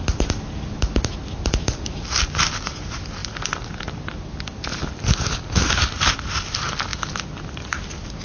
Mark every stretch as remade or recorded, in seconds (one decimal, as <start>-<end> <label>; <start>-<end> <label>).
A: 0.0-8.2 recorded